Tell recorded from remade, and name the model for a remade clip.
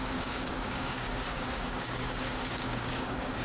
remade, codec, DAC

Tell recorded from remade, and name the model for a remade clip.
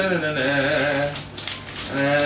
recorded